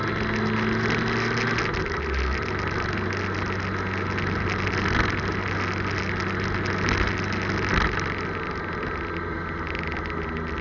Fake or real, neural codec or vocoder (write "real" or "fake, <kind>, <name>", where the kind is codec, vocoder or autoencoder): real